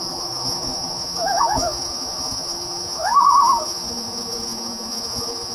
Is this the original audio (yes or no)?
no